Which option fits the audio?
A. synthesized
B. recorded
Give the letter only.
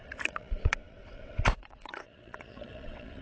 A